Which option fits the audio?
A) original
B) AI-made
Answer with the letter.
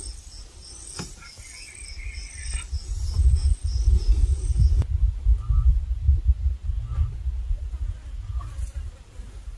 A